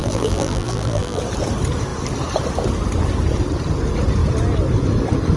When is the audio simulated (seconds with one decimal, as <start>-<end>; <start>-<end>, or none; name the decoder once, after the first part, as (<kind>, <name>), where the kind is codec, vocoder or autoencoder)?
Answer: 0.0-1.2 (vocoder, BigVGAN v2)